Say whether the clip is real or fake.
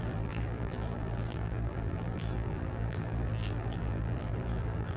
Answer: fake